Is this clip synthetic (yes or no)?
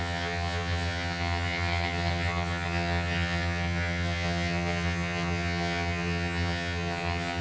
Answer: yes